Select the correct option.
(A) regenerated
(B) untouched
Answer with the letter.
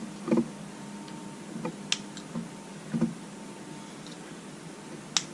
B